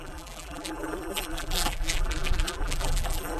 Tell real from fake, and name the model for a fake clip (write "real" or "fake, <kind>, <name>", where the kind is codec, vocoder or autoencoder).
fake, vocoder, BigVGAN v2